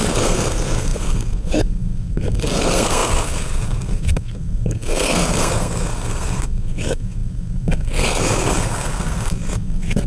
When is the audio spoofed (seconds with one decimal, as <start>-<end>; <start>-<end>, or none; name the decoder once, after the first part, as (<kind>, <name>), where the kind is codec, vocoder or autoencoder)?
0.0-10.1 (codec, SNAC)